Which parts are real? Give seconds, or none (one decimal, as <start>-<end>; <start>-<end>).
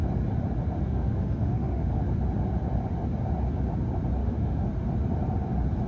0.0-0.8; 1.9-4.2; 4.7-5.9